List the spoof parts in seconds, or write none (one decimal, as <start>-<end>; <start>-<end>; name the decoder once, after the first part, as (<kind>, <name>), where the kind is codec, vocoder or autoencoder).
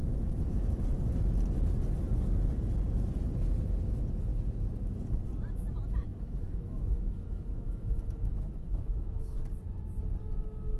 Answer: 0.0-0.8 (autoencoder, DAC-VAE); 6.1-9.5